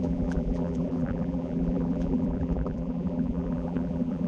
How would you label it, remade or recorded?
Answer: remade